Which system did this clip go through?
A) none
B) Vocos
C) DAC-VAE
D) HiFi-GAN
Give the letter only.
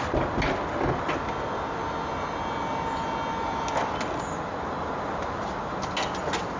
A